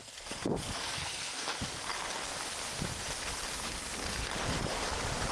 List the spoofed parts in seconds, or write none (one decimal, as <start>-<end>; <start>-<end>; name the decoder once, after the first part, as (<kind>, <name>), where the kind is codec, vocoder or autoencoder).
0.0-1.7 (codec, SNAC)